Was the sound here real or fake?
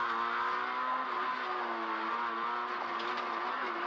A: real